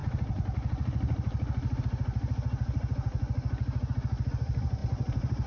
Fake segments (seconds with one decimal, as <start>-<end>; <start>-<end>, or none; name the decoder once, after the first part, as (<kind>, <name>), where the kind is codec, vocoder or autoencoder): 0.0-1.8 (vocoder, BigVGAN v2); 4.8-5.5